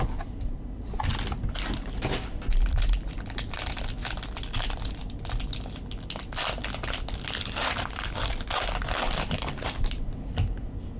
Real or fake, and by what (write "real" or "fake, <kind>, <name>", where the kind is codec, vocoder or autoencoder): real